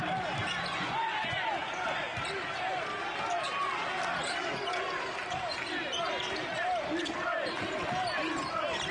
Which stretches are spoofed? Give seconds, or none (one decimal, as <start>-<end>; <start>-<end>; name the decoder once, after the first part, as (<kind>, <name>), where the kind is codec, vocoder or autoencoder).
0.7-1.5 (vocoder, Vocos)